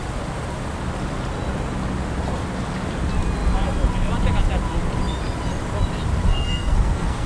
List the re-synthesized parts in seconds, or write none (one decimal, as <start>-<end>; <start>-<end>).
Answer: 6.3-7.3